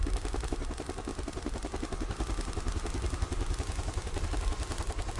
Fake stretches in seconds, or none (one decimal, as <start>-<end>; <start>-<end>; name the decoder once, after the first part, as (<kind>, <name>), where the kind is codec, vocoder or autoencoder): none